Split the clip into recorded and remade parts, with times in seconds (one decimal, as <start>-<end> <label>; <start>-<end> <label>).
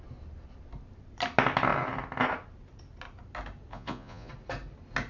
0.0-3.7 recorded; 3.7-4.3 remade; 4.3-5.1 recorded